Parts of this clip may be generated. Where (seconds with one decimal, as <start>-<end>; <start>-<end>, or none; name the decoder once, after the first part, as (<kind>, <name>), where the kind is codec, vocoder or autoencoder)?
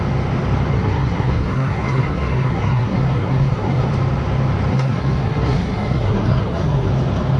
0.7-3.9 (codec, SNAC); 4.7-6.9